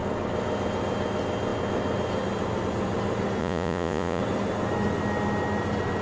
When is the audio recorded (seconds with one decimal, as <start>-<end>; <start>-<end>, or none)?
0.0-3.4; 4.2-6.0